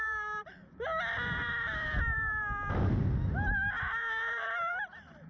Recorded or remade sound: remade